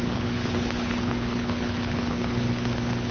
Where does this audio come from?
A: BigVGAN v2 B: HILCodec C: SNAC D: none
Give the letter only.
B